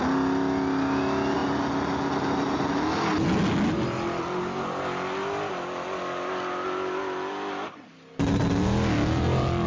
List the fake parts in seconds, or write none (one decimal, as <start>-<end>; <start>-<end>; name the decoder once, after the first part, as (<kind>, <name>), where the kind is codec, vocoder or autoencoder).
none